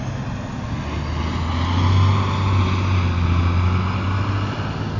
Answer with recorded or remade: recorded